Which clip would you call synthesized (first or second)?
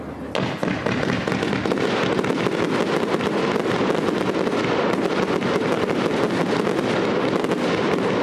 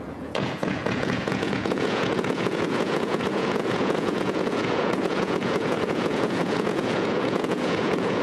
second